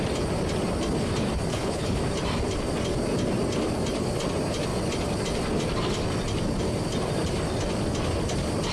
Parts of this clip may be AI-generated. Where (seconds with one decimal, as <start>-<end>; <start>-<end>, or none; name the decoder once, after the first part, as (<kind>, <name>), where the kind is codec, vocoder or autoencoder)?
1.5-2.0 (codec, HILCodec)